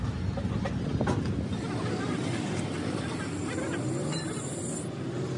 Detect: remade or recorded recorded